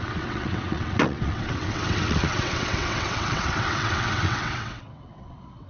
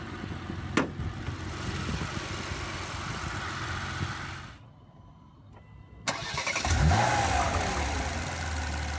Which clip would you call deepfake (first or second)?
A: first